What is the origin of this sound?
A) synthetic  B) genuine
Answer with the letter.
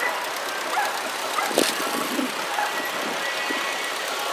A